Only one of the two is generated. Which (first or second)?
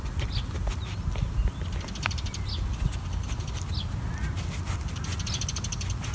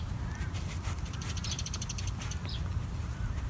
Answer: second